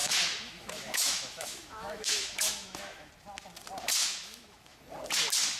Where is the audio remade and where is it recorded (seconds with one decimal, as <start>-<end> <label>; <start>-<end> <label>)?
0.0-3.1 remade; 3.1-4.0 recorded; 4.0-4.8 remade; 4.8-5.6 recorded

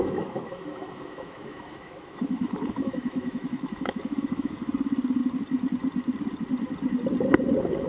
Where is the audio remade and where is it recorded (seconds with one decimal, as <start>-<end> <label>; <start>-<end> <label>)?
0.0-4.7 remade; 4.7-7.9 recorded